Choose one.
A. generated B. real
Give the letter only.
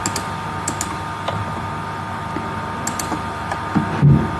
B